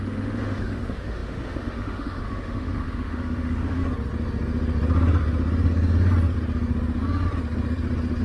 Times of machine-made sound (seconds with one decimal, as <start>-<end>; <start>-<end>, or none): 0.0-3.8